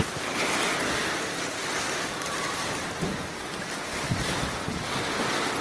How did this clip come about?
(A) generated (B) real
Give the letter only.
B